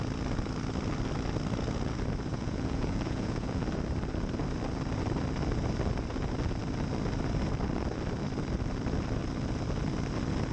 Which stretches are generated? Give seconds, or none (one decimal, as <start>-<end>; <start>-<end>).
2.3-3.6